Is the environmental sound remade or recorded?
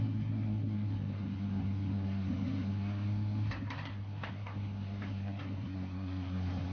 remade